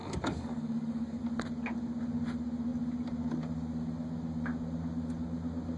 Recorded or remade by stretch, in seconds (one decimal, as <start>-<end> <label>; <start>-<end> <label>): 0.0-1.2 remade; 1.2-5.8 recorded